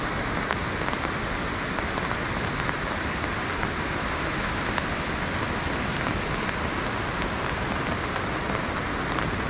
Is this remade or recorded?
recorded